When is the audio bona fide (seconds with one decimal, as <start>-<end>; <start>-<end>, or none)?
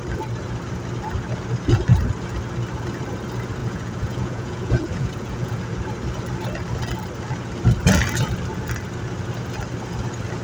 0.0-3.6; 5.7-10.4